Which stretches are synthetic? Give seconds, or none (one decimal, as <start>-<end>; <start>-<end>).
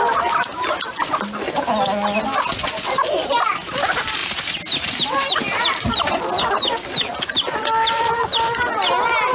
none